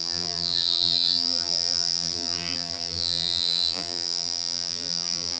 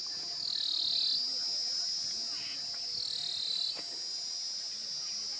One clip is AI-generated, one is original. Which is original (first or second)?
second